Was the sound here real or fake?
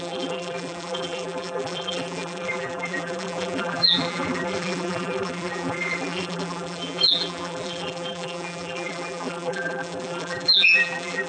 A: fake